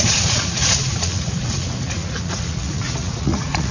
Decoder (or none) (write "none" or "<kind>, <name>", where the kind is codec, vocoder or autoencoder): vocoder, Vocos